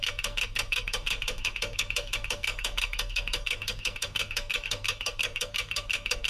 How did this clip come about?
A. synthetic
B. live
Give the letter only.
A